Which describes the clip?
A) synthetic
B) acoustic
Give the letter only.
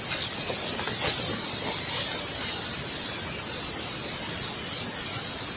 B